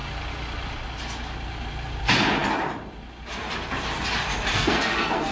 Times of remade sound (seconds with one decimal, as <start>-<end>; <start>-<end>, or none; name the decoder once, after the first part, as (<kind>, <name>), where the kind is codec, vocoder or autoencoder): 4.5-5.3 (codec, SNAC)